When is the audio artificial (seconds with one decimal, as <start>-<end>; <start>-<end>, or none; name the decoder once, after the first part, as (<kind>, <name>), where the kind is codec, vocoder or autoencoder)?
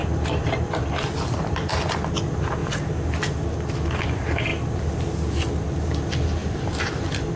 0.0-1.7 (vocoder, BigVGAN v2); 6.4-7.4